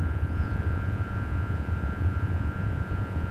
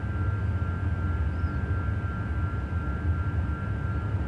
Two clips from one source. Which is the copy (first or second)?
first